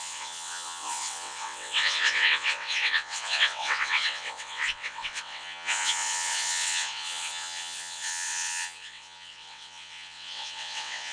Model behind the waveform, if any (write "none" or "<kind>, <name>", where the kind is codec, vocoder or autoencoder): vocoder, WaveNeXt